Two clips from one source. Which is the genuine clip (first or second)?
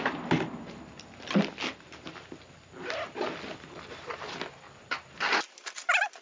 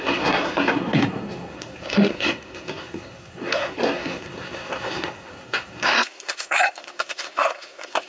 first